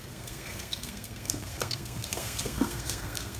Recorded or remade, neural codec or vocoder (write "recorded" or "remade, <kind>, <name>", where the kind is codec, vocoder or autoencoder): remade, codec, SNAC